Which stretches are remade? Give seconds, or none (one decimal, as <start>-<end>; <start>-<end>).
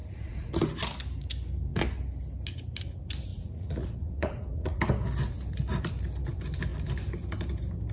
0.0-0.5; 3.3-4.8